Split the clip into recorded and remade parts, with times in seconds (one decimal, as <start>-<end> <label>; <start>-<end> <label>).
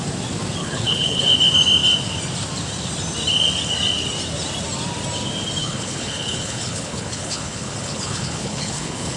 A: 0.0-0.6 recorded; 0.6-1.2 remade; 1.2-5.6 recorded; 5.6-9.2 remade